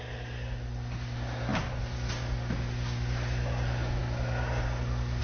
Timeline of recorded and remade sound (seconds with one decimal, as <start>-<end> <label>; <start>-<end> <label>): 0.0-5.2 recorded